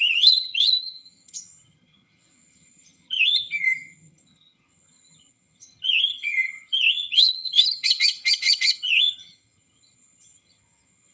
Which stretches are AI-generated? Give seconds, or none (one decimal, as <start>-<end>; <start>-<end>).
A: 0.0-11.1

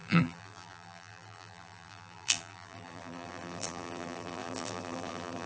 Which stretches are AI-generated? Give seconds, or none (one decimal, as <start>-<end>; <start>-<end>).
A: 0.0-5.5

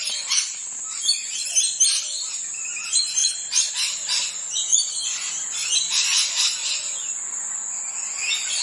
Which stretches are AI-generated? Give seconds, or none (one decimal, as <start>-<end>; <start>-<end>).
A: 3.2-3.7; 4.7-5.3; 6.6-7.8

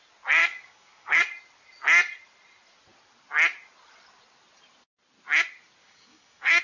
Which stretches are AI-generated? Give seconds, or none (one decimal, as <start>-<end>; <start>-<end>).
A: 0.4-1.2; 5.8-6.6